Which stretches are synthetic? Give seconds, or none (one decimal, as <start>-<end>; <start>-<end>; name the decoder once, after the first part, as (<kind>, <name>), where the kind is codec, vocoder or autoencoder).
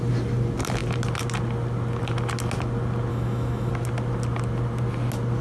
3.1-3.7 (autoencoder, DAC-VAE)